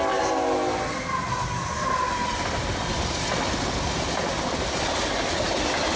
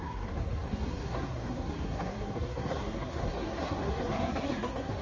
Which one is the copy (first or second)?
second